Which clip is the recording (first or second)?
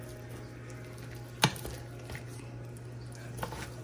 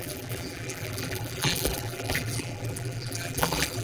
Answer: first